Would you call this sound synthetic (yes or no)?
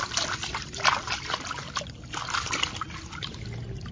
no